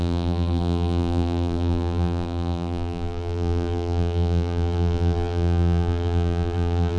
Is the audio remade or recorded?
remade